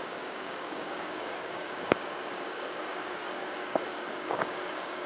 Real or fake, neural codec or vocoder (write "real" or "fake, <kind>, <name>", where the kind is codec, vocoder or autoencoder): fake, codec, DAC